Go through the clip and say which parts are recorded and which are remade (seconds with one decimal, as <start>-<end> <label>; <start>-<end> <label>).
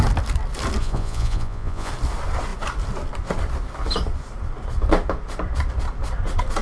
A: 0.0-0.8 recorded; 0.8-1.9 remade; 1.9-6.6 recorded